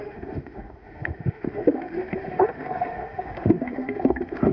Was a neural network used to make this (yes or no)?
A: yes